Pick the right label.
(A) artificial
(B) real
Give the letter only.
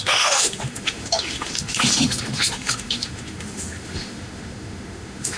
A